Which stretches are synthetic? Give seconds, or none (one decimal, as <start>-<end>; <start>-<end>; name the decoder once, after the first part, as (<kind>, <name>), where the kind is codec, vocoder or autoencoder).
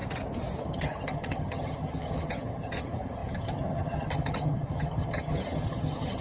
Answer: 0.6-6.2 (vocoder, HiFi-GAN)